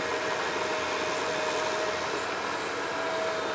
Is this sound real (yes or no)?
yes